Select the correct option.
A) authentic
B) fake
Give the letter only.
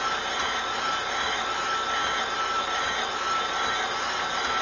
A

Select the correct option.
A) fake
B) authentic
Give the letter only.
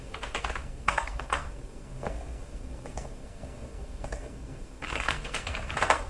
A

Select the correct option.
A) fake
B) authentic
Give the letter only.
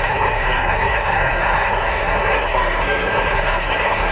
A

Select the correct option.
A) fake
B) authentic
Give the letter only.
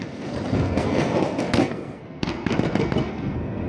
A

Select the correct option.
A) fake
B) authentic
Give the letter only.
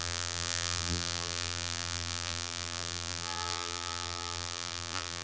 A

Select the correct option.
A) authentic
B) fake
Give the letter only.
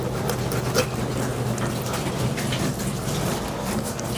A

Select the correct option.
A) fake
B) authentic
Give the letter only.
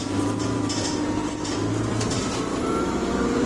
A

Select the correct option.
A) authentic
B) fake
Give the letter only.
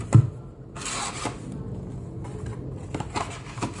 A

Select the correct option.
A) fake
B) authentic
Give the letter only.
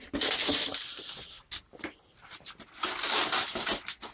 B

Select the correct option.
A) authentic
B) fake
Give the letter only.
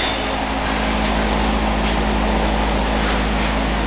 A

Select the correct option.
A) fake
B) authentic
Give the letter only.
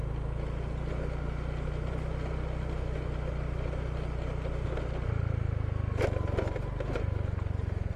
B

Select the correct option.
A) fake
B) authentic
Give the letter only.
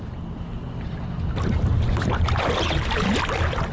B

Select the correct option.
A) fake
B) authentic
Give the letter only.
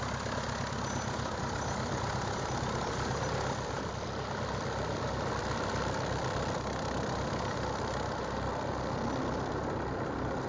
B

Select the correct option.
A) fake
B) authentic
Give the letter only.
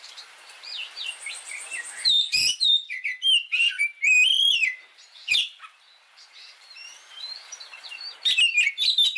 A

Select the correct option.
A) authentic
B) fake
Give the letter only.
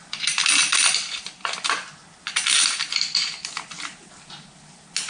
A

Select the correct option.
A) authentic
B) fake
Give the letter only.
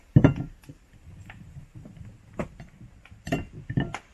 A